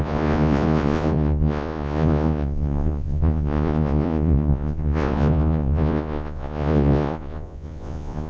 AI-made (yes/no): yes